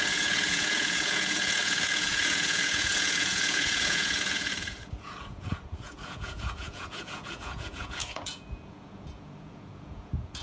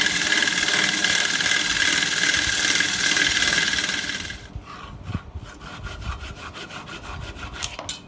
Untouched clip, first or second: second